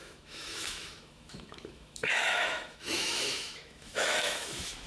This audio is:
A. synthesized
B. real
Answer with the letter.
A